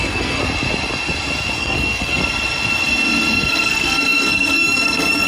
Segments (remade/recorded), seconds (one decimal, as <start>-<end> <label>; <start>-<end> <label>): 0.0-0.4 remade; 0.4-1.6 recorded; 1.6-2.2 remade; 2.2-3.5 recorded; 3.5-5.3 remade